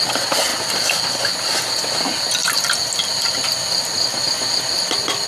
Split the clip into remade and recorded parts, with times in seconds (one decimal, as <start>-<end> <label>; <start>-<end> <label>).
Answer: 0.0-0.5 recorded; 0.5-1.3 remade; 1.3-2.4 recorded; 2.4-4.6 remade; 4.6-5.3 recorded